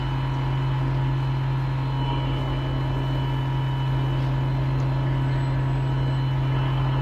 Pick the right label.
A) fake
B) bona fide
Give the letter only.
B